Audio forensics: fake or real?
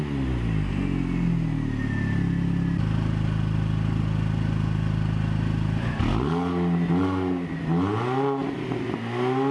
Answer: real